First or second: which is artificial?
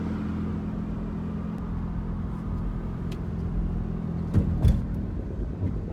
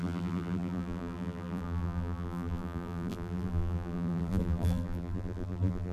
second